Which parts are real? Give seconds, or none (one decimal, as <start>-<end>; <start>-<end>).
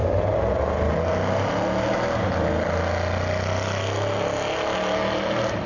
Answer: 0.0-5.7